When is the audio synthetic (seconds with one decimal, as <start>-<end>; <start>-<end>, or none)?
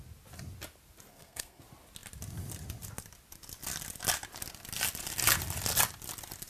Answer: 1.1-1.6